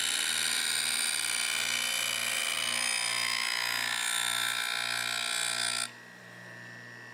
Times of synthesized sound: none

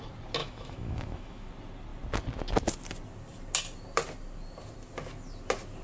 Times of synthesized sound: 0.4-1.5 (autoencoder, DAC-VAE)